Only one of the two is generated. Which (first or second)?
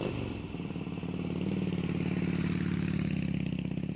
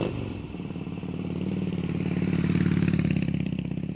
second